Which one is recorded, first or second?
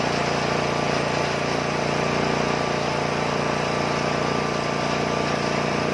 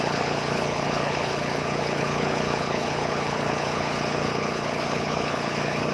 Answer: first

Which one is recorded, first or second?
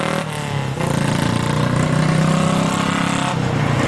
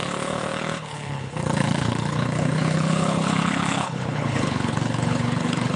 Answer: first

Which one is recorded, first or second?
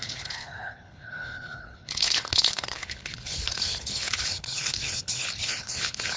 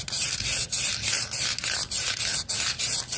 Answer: second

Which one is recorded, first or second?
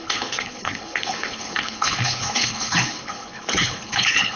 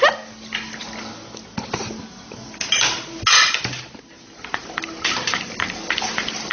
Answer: second